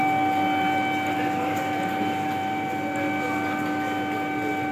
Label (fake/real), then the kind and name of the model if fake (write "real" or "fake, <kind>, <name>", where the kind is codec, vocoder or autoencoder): real